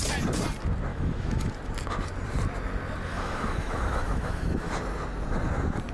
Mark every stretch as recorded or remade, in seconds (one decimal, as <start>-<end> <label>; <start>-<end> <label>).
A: 0.0-0.9 recorded; 0.9-1.5 remade; 1.5-3.1 recorded; 3.1-4.7 remade; 4.7-5.9 recorded